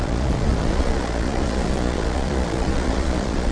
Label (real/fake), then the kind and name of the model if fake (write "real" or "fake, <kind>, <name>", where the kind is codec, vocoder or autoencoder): fake, vocoder, Vocos